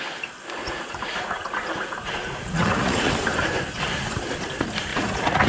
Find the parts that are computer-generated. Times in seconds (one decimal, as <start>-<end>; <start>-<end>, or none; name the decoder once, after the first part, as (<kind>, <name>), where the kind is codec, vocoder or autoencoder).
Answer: 0.6-3.1 (vocoder, Vocos); 4.9-5.5